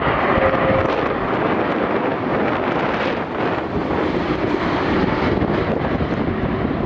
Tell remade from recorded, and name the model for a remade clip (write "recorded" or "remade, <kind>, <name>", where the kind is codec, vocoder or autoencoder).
recorded